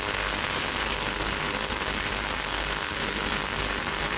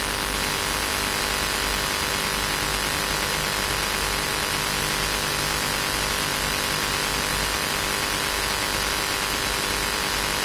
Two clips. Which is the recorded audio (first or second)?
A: second